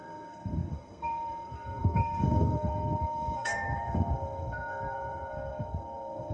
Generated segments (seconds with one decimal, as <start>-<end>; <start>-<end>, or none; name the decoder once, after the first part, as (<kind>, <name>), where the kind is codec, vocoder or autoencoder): 0.0-6.3 (codec, SNAC)